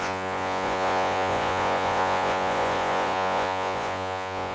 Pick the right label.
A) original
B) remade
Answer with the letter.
B